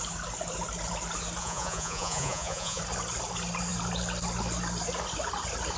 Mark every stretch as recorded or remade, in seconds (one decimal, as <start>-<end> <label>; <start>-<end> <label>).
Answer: 0.0-1.4 recorded; 1.4-2.8 remade; 2.8-5.8 recorded

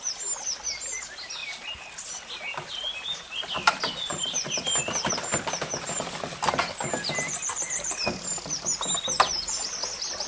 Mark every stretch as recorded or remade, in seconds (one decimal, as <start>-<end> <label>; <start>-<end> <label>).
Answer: 0.0-10.3 recorded